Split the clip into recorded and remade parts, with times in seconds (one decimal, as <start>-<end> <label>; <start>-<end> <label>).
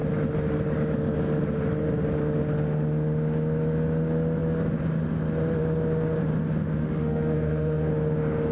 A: 0.0-6.8 recorded; 6.8-7.9 remade; 7.9-8.5 recorded